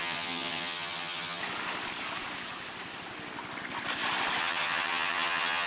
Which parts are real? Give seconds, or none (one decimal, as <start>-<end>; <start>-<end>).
1.4-4.4